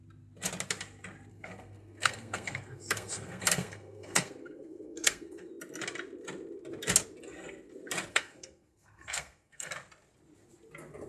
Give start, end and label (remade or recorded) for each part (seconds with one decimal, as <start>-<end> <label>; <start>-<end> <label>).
0.0-1.3 recorded; 1.3-5.5 remade; 5.5-8.1 recorded; 8.1-9.7 remade; 9.7-11.1 recorded